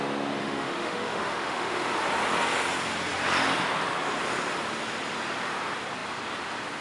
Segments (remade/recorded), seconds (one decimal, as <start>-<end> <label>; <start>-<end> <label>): 0.0-0.4 recorded; 0.4-1.9 remade; 1.9-6.8 recorded